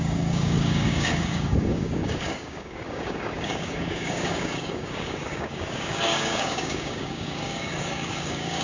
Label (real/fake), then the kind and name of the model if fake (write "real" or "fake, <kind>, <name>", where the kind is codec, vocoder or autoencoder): fake, codec, DAC